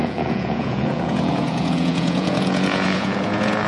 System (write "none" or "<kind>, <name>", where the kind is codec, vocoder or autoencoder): vocoder, Vocos